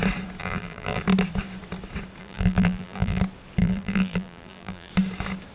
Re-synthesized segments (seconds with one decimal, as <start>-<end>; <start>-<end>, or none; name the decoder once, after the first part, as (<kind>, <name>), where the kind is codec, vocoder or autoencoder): 0.4-1.0 (vocoder, BigVGAN v2); 2.2-3.2; 3.6-4.9